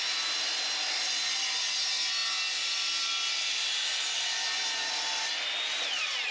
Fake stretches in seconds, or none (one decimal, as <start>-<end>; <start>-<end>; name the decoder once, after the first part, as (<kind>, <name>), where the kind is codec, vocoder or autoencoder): none